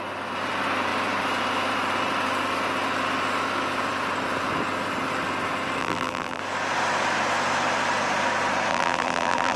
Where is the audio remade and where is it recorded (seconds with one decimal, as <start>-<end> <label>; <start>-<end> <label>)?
0.0-5.8 recorded; 5.8-6.4 remade; 6.4-8.7 recorded; 8.7-9.6 remade